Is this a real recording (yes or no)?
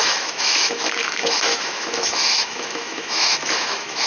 no